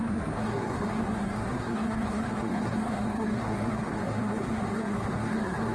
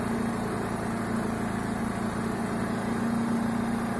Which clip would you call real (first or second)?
second